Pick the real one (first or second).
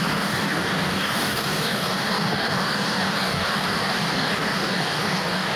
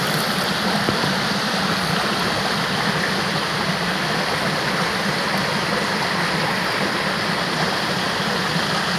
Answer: second